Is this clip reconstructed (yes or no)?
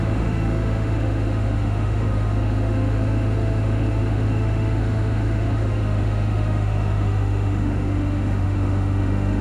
yes